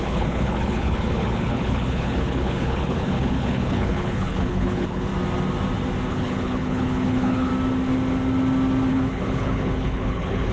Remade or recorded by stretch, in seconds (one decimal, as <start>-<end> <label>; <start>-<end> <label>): 0.0-5.1 remade; 5.1-6.1 recorded; 6.1-7.5 remade; 7.5-8.9 recorded; 8.9-10.5 remade

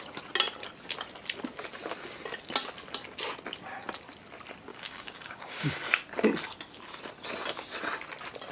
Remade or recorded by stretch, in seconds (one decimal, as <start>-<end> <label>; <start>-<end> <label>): 0.0-4.7 recorded; 4.7-5.7 remade; 5.7-8.5 recorded

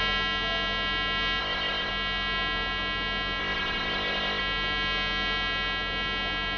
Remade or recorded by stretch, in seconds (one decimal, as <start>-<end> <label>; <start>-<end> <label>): 0.0-1.4 recorded; 1.4-1.9 remade; 1.9-3.4 recorded; 3.4-4.4 remade; 4.4-6.6 recorded